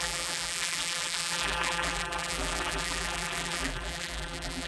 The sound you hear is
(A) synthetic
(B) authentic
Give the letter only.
A